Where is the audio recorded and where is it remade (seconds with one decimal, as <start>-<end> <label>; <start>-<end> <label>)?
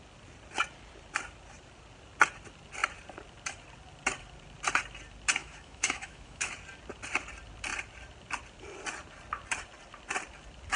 0.0-5.4 recorded; 5.4-6.5 remade; 6.5-10.8 recorded